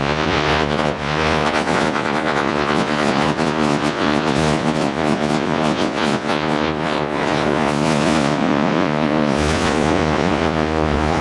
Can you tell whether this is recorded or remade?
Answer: remade